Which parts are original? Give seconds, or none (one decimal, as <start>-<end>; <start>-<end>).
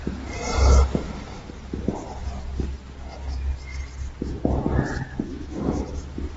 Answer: 0.0-5.3; 5.8-6.4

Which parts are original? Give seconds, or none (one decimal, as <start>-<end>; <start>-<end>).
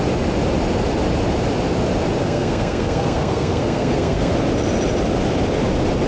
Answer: 0.0-2.2; 4.3-6.1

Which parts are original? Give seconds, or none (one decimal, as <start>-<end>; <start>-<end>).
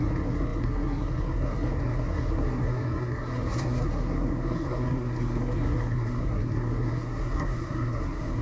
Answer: none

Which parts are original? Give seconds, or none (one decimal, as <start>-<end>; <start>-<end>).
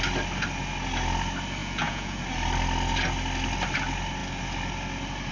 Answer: 0.0-1.6; 2.2-5.3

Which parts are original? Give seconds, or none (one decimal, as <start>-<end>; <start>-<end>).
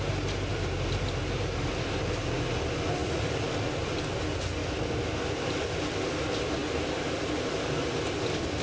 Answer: 0.0-0.5; 2.4-3.0; 3.6-8.6